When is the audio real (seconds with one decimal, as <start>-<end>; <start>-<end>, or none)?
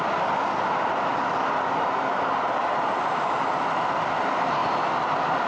0.0-5.5